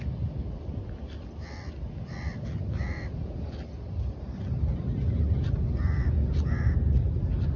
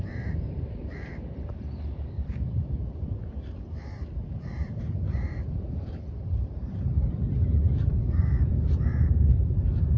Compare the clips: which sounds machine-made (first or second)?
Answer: second